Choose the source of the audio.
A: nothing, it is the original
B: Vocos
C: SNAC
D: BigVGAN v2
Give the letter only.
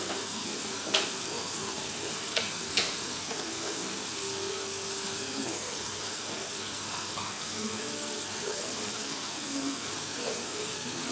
C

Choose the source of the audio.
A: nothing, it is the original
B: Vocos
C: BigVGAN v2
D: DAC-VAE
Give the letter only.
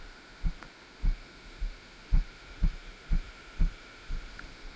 D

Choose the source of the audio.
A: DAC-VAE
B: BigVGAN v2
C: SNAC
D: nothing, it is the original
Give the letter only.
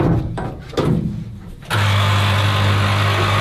D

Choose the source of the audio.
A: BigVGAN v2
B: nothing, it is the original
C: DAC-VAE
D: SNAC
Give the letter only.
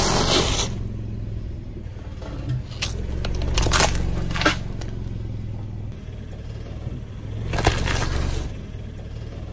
B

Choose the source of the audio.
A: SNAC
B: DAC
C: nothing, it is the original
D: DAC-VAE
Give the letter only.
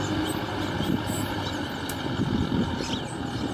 C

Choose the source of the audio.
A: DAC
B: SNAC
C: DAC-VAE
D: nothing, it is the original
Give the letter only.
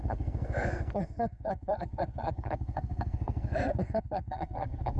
B